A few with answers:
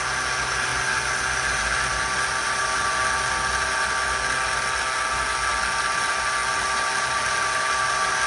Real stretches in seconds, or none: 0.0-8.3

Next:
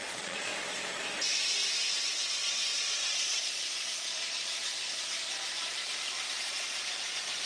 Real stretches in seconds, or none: 0.5-2.3; 4.9-6.3

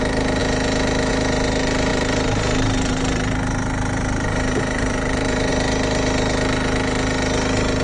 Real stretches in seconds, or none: 0.0-1.9; 5.5-7.8